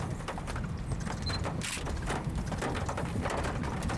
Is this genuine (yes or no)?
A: yes